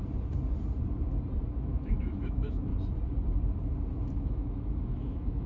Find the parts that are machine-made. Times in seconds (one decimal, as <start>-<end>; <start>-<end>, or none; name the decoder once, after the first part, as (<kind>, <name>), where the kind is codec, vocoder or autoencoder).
1.6-2.7 (autoencoder, DAC-VAE); 4.1-5.5